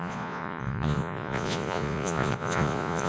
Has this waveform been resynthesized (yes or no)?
yes